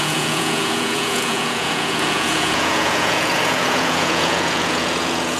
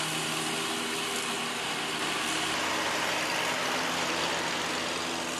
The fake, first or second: first